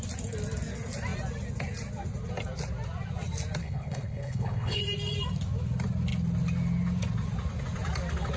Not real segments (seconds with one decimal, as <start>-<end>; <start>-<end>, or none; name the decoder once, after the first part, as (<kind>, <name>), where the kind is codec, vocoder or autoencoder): 3.6-4.8 (codec, HILCodec)